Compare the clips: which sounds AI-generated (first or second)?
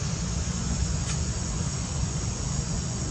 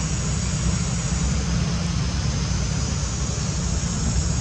first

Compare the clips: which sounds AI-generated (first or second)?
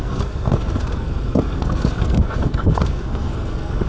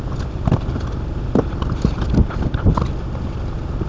first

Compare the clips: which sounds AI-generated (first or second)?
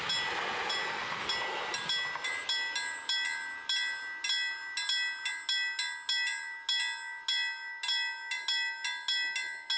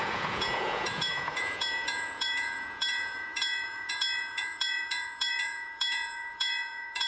second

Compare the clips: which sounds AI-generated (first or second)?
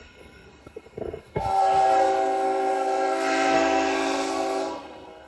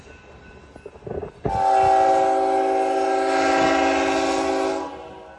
first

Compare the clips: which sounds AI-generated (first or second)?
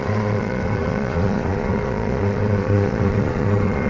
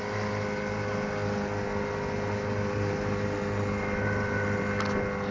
first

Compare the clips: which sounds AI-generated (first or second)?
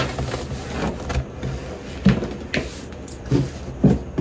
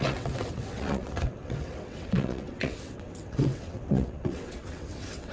second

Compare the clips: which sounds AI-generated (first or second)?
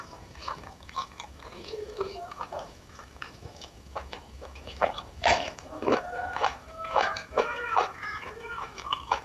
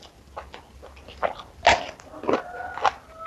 first